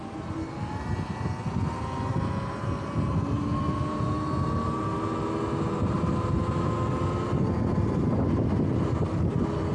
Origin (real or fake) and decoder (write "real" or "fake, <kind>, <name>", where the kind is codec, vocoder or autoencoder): real